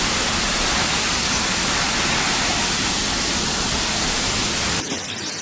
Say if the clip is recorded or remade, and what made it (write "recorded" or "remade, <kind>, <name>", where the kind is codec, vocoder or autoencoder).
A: recorded